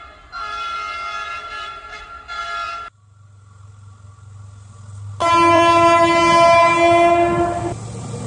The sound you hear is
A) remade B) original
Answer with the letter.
B